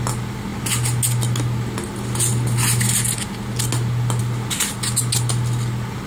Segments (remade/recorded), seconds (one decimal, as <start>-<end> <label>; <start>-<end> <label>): 0.0-6.1 recorded

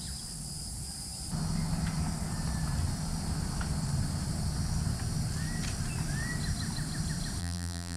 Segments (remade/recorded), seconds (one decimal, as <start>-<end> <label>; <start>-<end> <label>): 0.0-7.4 recorded; 7.4-8.0 remade